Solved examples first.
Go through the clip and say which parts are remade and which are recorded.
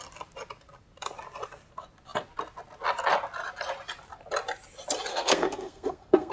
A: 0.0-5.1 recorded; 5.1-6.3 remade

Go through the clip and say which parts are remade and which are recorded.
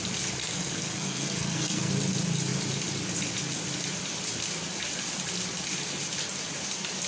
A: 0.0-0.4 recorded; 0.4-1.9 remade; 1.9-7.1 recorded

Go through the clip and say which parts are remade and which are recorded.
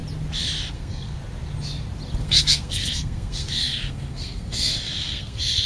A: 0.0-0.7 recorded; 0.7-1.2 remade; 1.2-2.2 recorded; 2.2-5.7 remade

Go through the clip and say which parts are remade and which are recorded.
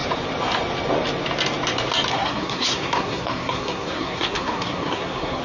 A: 0.0-2.1 recorded; 2.1-5.4 remade